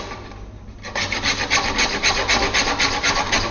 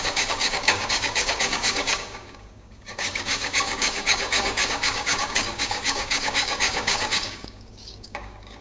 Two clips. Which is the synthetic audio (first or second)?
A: second